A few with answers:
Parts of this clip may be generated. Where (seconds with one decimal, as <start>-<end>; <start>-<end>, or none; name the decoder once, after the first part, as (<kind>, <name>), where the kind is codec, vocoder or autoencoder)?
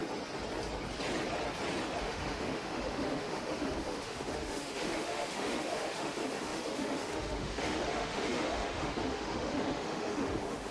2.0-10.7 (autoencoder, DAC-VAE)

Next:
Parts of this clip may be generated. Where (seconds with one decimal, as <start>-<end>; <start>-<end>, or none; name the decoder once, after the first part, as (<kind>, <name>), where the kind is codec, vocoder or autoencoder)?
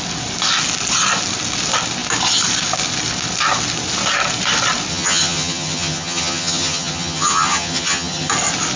4.9-8.3 (vocoder, HiFi-GAN)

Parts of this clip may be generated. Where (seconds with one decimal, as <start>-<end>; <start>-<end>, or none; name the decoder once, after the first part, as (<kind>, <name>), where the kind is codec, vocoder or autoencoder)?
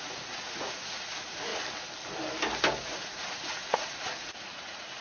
0.0-1.5 (vocoder, Vocos); 2.8-5.0